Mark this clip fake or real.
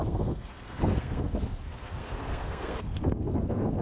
fake